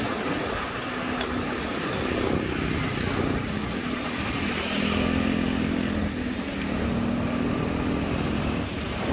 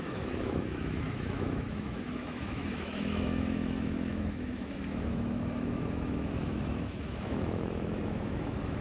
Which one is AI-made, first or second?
second